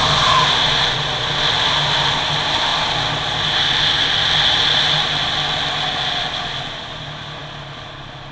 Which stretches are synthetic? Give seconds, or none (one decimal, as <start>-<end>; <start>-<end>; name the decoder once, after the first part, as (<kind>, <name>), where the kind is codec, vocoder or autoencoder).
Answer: none